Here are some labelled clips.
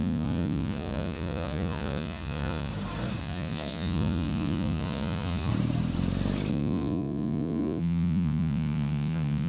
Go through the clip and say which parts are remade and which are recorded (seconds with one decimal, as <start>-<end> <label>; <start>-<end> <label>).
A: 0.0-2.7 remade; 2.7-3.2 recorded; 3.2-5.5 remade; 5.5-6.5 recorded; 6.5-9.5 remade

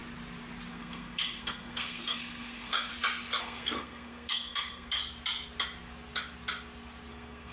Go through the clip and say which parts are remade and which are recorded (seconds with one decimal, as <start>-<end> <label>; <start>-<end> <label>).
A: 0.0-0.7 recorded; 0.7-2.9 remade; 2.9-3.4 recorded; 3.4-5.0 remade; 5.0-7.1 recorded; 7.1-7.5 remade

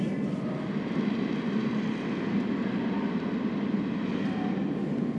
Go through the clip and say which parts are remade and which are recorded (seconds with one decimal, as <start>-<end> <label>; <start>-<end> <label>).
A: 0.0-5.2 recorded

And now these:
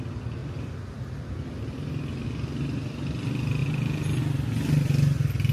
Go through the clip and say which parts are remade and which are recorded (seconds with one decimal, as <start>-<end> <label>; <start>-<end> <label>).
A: 0.0-3.6 recorded; 3.6-4.2 remade; 4.2-5.5 recorded

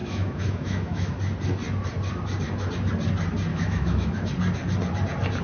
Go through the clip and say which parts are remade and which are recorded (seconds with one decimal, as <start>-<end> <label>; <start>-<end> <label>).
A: 0.0-1.2 remade; 1.2-3.5 recorded; 3.5-4.3 remade; 4.3-5.4 recorded

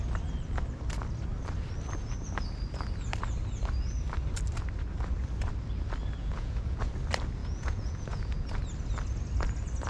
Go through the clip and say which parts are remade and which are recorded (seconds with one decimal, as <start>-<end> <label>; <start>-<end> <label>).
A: 0.0-6.2 recorded; 6.2-6.9 remade; 6.9-7.4 recorded; 7.4-8.5 remade; 8.5-9.9 recorded